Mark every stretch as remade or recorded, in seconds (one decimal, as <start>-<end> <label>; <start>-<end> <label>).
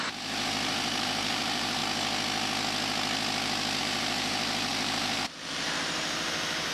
0.0-1.8 remade; 1.8-3.8 recorded; 3.8-6.7 remade